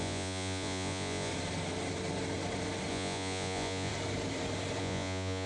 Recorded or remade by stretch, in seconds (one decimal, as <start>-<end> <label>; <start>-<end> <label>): 0.0-1.3 remade; 1.3-2.9 recorded; 2.9-3.9 remade; 3.9-4.8 recorded; 4.8-5.5 remade